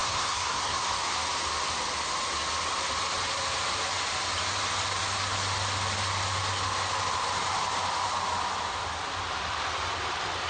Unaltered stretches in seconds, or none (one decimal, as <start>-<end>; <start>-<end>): 0.8-10.5